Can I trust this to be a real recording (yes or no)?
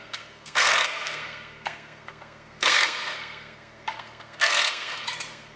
no